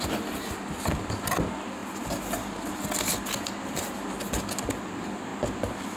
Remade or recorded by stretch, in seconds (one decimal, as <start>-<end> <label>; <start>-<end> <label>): 0.0-6.0 recorded